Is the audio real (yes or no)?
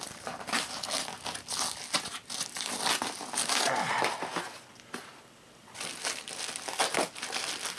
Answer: yes